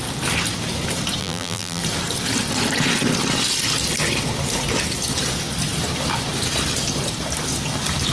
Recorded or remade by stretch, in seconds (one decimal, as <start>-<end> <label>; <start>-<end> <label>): 0.0-1.2 recorded; 1.2-1.8 remade; 1.8-8.1 recorded